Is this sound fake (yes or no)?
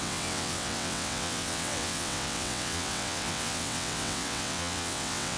yes